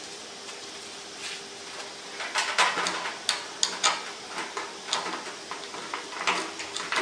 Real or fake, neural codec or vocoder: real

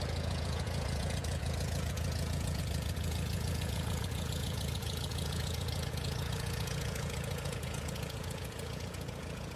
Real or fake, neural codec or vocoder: fake, vocoder, Vocos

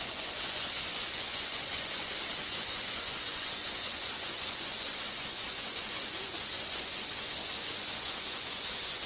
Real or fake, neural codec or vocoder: fake, vocoder, Vocos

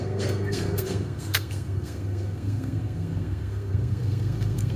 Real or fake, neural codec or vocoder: fake, codec, SNAC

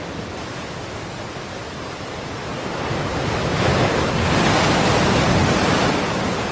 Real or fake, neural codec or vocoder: real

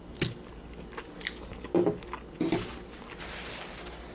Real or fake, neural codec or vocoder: real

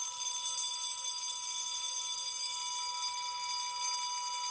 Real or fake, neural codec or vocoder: real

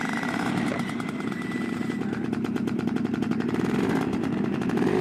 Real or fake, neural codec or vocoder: fake, vocoder, BigVGAN v2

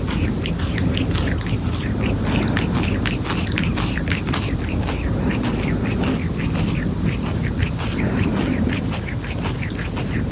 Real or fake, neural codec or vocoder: real